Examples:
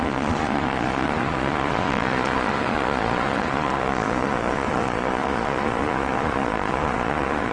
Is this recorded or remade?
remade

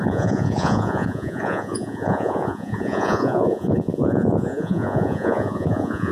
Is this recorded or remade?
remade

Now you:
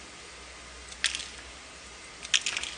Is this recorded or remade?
recorded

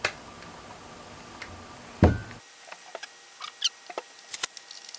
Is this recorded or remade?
recorded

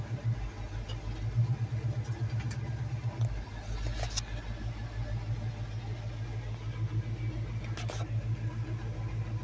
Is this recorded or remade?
recorded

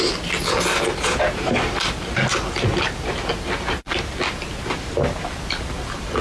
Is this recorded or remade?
recorded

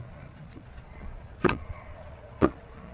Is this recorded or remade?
remade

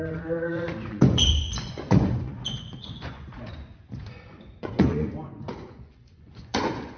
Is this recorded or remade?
remade